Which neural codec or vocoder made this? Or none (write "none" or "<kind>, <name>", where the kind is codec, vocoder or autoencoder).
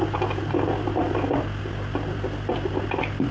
none